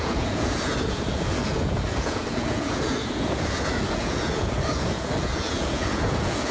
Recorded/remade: remade